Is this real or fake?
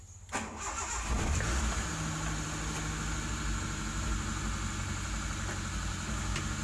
real